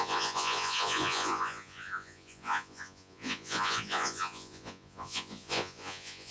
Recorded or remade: remade